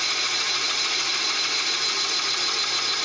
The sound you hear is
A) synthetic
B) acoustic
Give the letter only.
B